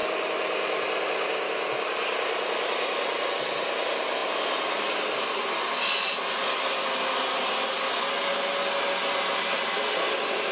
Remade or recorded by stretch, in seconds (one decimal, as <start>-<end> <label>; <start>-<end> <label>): 0.0-10.5 recorded